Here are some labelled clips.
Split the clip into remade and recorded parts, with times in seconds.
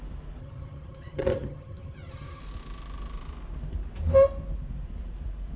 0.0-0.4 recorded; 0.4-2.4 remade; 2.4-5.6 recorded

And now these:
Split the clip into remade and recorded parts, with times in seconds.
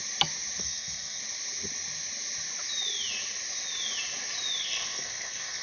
0.0-0.6 recorded; 0.6-1.2 remade; 1.2-4.6 recorded; 4.6-5.6 remade